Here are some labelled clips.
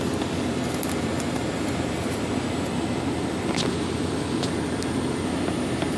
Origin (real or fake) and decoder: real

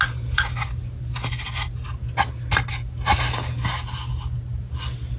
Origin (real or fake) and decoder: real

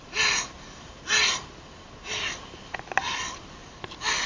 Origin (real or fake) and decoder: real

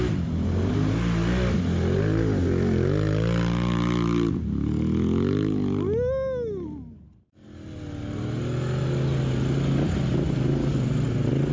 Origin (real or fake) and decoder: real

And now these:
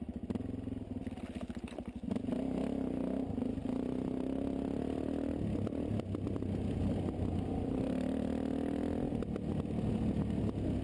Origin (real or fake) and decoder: real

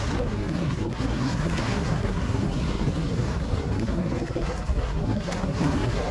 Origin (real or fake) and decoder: fake, codec, SNAC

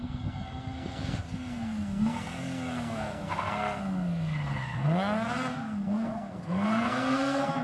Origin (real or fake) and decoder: fake, codec, SNAC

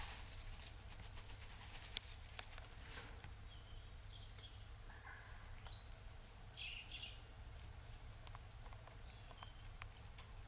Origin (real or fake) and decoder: real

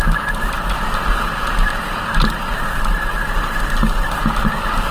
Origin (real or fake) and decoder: real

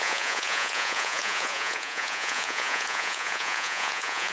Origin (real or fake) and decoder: fake, vocoder, Vocos